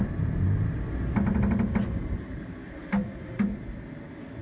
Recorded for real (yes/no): yes